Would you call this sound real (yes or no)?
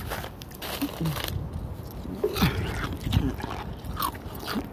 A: yes